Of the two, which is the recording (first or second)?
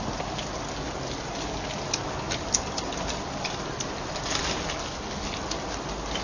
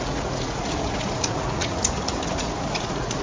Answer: first